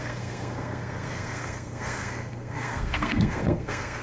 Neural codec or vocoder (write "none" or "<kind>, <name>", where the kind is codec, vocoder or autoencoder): codec, SNAC